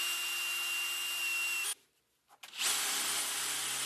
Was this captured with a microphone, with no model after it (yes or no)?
yes